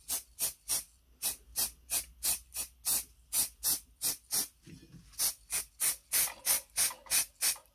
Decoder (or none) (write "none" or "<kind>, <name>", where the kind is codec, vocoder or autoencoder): none